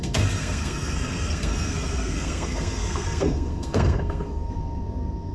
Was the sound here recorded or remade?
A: remade